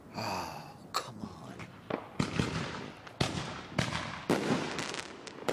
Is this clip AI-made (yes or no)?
no